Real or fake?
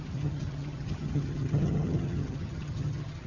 fake